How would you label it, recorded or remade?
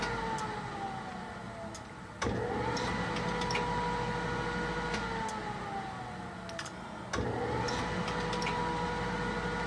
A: recorded